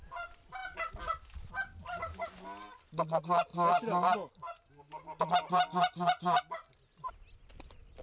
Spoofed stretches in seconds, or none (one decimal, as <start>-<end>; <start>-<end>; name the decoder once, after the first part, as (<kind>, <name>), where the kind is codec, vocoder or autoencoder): none